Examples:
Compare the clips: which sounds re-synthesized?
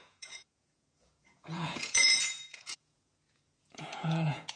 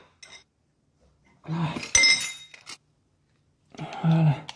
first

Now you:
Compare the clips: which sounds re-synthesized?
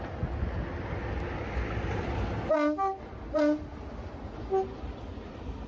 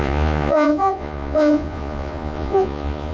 second